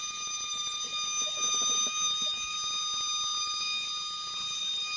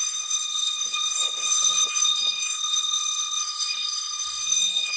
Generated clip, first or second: second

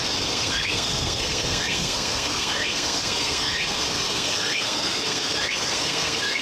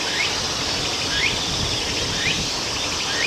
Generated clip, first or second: first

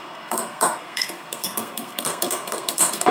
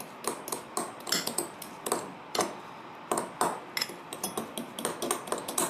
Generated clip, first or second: first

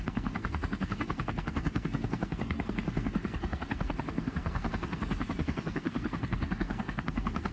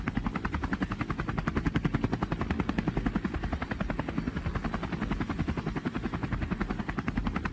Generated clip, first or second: first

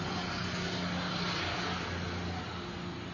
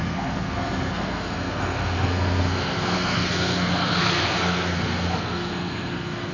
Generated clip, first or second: second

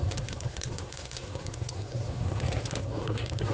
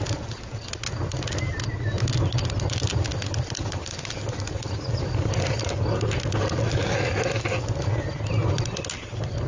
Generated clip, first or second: first